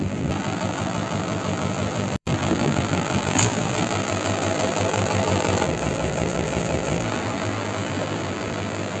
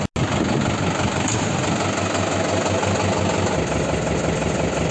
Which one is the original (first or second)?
second